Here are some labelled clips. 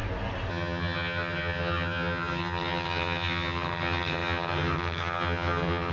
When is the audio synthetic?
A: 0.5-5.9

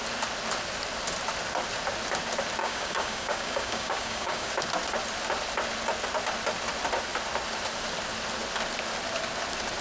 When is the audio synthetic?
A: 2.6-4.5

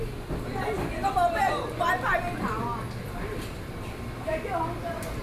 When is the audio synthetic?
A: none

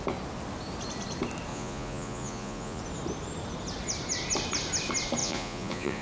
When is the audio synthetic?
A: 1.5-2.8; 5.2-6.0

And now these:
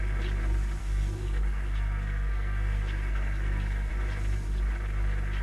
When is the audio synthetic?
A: 0.8-3.9

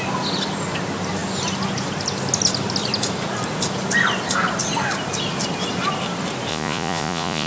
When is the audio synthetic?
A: 6.5-7.5

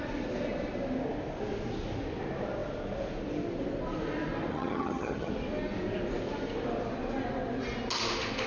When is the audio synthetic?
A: 4.5-5.3